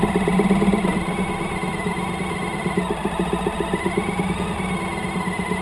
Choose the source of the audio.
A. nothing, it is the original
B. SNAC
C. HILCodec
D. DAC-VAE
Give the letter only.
A